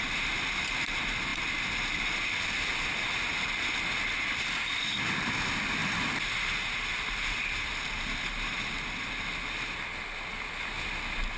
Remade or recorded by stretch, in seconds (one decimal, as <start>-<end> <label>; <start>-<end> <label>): 0.0-5.8 recorded; 5.8-6.6 remade; 6.6-11.4 recorded